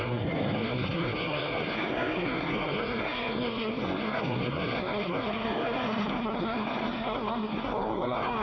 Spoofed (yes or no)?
yes